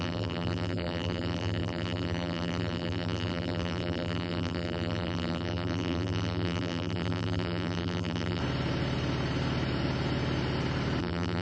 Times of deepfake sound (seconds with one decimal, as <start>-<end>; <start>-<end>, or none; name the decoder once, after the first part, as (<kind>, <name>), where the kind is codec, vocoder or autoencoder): 0.0-8.4 (vocoder, BigVGAN v2); 11.0-11.4